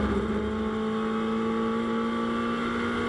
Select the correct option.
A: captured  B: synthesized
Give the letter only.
A